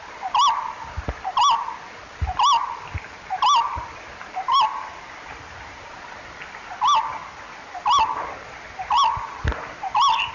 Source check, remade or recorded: recorded